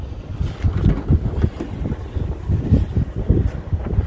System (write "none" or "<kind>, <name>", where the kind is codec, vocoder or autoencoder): none